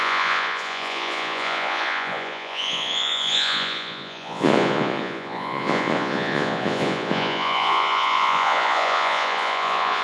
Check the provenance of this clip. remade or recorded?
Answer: remade